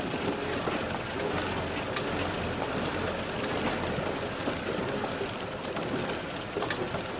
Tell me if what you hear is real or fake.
real